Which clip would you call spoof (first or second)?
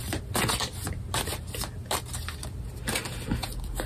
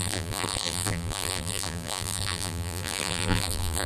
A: second